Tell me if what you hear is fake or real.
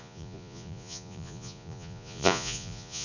fake